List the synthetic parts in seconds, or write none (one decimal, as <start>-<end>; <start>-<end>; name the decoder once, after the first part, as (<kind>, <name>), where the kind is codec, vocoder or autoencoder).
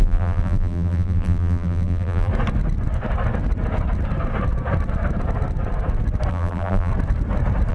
0.0-2.3 (vocoder, BigVGAN v2); 6.3-6.9